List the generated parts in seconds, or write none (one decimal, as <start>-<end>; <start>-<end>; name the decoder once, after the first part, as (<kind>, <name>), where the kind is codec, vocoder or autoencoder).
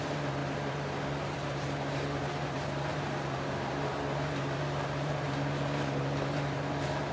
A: 0.0-7.1 (vocoder, BigVGAN v2)